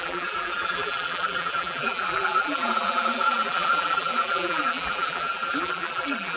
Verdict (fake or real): fake